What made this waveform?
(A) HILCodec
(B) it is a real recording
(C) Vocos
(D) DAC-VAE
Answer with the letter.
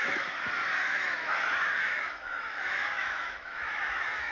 D